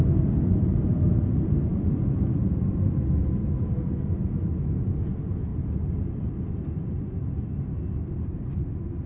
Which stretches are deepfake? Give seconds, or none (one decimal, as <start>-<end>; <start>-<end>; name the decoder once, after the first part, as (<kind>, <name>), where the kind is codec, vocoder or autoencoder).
none